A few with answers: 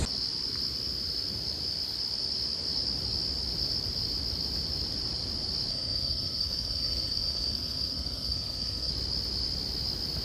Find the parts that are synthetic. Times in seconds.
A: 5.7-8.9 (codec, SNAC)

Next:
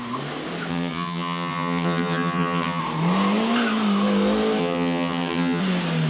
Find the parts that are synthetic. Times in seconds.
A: 0.7-2.8 (vocoder, HiFi-GAN); 4.6-5.6

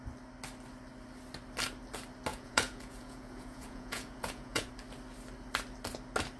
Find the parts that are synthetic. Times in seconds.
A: 2.3-4.7 (vocoder, Vocos)

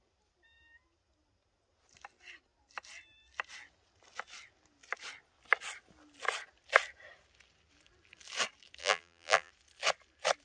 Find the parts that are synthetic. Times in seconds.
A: 8.8-9.5 (vocoder, BigVGAN v2)

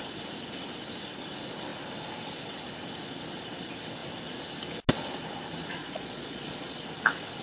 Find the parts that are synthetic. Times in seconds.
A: 5.8-6.8 (vocoder, Vocos)

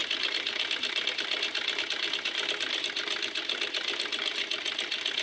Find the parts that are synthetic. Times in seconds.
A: none

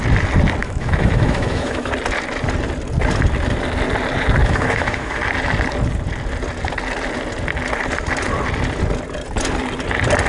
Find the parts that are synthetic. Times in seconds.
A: 0.6-1.9 (autoencoder, DAC-VAE); 4.4-5.2